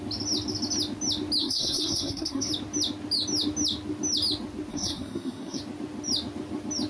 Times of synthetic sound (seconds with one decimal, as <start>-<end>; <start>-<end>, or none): 1.4-2.5; 4.7-5.6